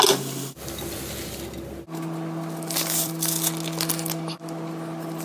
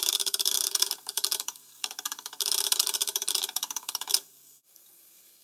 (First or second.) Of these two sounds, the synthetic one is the second